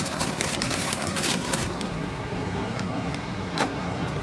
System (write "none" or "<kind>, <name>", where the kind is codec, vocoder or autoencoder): codec, SNAC